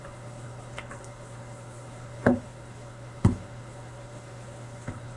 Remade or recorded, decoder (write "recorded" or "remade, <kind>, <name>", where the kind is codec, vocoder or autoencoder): remade, codec, HILCodec